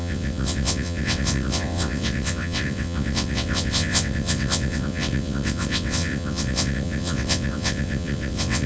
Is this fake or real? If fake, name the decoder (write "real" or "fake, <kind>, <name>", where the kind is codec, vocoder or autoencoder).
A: fake, vocoder, WaveNeXt